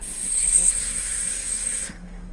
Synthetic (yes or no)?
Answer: yes